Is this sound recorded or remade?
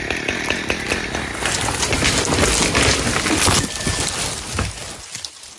recorded